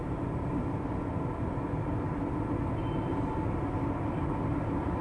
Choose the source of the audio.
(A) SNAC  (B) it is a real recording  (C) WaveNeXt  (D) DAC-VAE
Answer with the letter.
B